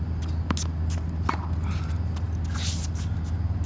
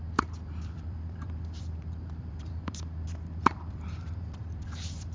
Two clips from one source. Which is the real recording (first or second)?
first